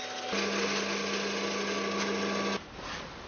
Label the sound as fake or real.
real